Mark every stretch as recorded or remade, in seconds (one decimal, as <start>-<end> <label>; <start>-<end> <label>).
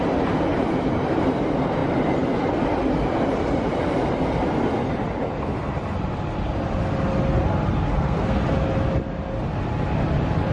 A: 0.0-7.9 recorded; 7.9-8.4 remade; 8.4-10.5 recorded